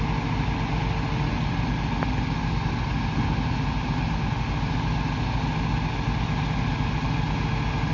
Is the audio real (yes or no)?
yes